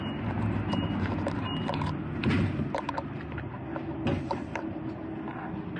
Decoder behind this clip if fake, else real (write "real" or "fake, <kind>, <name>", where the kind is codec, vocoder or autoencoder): real